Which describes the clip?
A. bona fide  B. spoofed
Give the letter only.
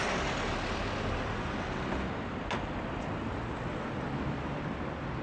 A